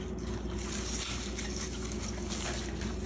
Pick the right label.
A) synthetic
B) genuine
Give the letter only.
B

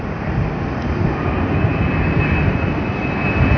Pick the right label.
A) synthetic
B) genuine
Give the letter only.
B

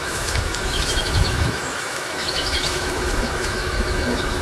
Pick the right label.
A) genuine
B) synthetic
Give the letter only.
B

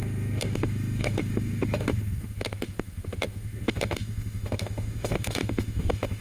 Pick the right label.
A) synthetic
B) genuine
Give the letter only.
A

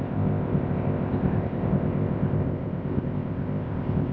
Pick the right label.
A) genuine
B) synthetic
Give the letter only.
B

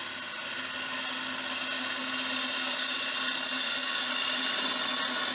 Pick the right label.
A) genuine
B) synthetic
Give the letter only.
A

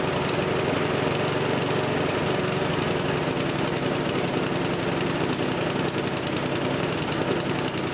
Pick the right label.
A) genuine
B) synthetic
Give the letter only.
A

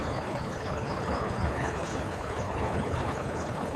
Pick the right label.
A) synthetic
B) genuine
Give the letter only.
A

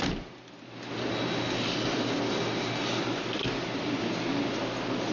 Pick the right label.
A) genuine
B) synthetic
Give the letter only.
A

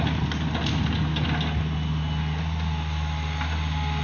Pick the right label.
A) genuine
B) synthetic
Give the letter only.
A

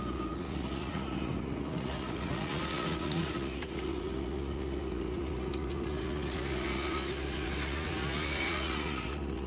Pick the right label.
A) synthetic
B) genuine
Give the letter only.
A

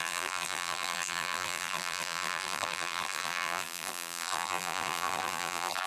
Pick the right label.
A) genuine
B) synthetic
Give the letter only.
B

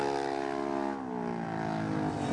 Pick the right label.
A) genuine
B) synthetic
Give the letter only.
A